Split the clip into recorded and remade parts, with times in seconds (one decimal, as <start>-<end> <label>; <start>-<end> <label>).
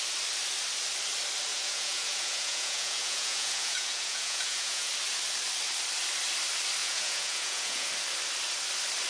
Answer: 0.0-1.5 recorded; 1.5-4.9 remade; 4.9-6.8 recorded; 6.8-7.9 remade; 7.9-9.1 recorded